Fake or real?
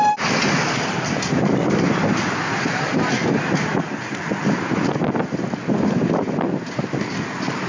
real